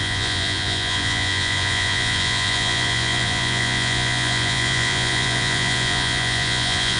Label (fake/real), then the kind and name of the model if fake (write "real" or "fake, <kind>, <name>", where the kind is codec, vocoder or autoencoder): fake, vocoder, Vocos